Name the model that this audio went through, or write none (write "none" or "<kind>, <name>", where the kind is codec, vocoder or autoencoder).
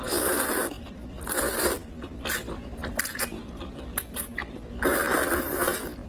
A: none